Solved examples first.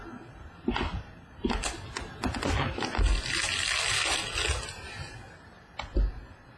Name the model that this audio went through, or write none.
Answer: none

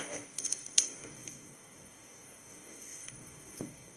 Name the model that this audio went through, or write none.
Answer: codec, DAC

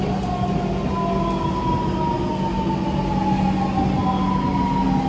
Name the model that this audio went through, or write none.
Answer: none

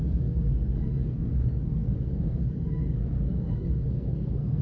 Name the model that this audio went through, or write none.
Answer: codec, SNAC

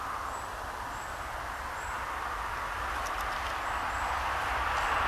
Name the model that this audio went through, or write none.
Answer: none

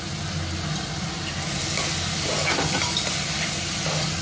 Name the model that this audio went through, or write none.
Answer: none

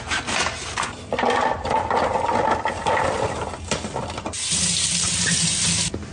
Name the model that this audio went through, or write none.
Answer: none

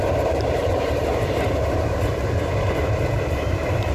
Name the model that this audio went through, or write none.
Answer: vocoder, BigVGAN v2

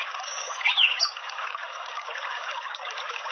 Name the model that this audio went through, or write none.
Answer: codec, DAC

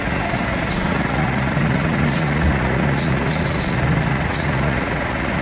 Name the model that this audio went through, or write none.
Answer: vocoder, Vocos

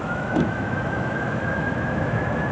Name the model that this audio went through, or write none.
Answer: autoencoder, DAC-VAE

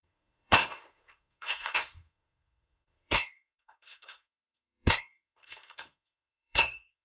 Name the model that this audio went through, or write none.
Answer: codec, SNAC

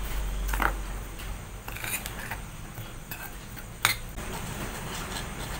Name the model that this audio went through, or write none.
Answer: none